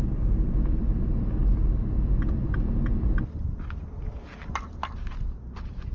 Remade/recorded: recorded